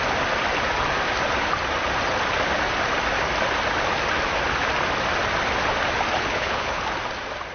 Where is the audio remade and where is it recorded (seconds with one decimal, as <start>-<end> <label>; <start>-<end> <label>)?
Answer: 0.0-6.1 recorded; 6.1-6.8 remade; 6.8-7.5 recorded